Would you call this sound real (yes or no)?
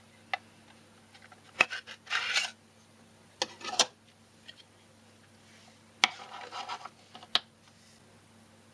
yes